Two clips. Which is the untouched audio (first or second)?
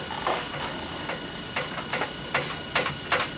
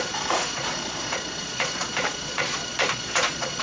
first